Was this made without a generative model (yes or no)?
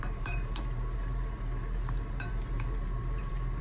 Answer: no